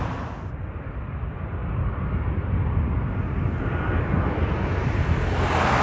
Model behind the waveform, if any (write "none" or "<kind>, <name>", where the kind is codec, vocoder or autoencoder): none